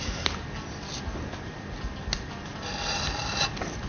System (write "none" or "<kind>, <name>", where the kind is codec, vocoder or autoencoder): none